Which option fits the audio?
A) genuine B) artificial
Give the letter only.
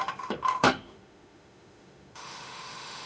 B